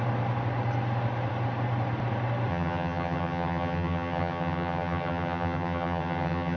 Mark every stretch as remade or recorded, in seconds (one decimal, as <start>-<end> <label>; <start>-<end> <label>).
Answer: 0.0-2.5 recorded; 2.5-6.6 remade